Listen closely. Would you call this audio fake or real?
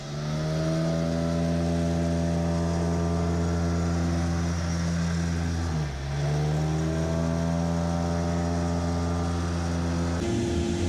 real